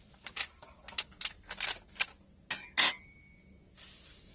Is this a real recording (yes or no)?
yes